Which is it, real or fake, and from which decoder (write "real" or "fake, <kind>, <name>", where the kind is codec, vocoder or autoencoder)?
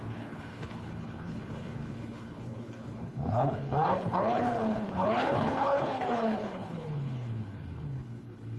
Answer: fake, codec, HILCodec